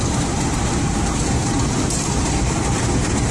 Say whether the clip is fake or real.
fake